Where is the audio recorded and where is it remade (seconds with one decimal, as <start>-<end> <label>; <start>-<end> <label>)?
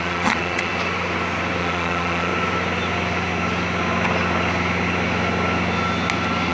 0.0-0.7 remade; 0.7-1.6 recorded; 1.6-2.3 remade; 2.3-6.5 recorded